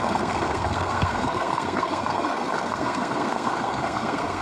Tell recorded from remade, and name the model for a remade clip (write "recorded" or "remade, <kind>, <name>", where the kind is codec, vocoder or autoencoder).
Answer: remade, codec, SNAC